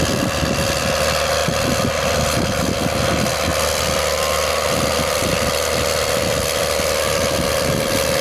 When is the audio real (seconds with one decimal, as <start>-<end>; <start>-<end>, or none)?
0.0-8.2